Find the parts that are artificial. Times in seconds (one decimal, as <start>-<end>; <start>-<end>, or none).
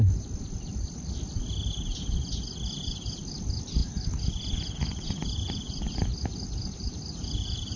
none